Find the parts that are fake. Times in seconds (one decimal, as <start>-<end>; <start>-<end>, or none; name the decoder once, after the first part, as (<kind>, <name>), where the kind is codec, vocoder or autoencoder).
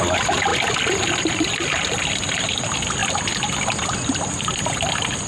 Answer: none